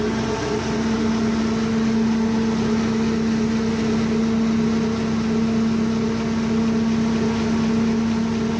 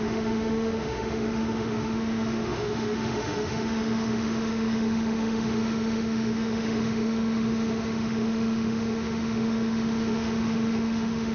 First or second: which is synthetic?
second